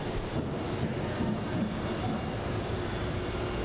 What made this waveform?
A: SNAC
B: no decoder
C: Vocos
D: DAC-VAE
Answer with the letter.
B